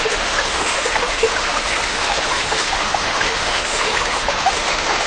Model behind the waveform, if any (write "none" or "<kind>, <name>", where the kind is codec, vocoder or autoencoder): autoencoder, DAC-VAE